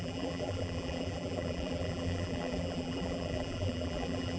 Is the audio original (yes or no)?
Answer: no